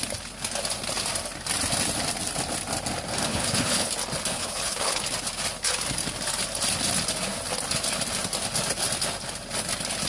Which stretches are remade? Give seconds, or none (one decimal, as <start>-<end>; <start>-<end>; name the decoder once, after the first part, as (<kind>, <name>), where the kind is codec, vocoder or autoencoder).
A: 3.3-3.9 (codec, HILCodec); 4.3-5.0